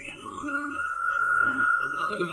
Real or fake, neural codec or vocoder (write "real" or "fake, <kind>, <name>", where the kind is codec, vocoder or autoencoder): fake, codec, SNAC